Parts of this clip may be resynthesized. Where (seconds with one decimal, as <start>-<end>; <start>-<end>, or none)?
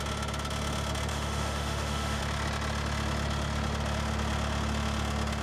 1.1-2.2